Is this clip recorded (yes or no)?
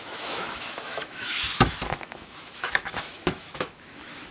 no